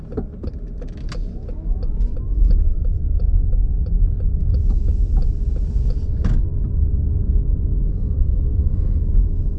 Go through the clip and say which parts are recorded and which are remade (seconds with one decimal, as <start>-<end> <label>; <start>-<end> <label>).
0.0-7.9 recorded; 7.9-9.0 remade; 9.0-9.6 recorded